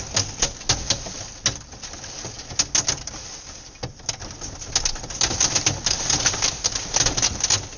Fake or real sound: real